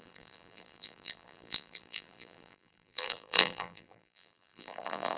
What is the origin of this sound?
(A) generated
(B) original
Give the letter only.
A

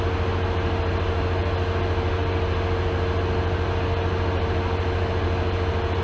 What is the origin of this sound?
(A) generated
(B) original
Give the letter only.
B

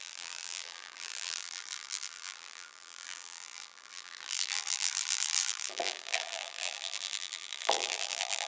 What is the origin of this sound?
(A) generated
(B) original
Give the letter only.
A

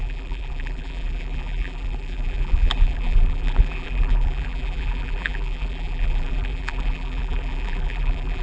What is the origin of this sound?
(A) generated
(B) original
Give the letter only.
A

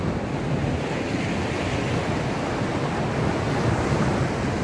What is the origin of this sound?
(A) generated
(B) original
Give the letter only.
B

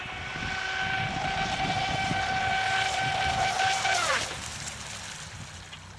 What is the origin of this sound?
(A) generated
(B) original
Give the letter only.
B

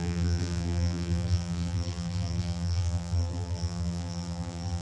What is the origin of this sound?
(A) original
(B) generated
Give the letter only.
B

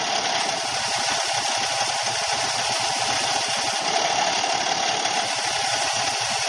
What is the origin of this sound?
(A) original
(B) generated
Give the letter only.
A